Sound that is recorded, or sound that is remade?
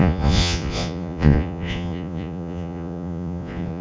remade